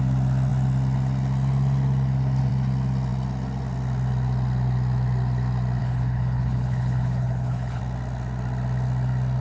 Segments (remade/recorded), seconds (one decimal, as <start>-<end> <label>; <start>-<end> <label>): 0.0-5.8 recorded; 5.8-7.8 remade; 7.8-9.4 recorded